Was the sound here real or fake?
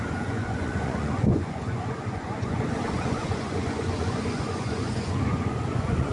fake